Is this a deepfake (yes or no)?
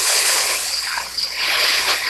yes